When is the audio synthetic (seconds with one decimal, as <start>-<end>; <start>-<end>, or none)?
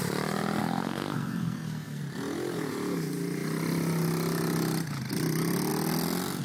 0.6-2.0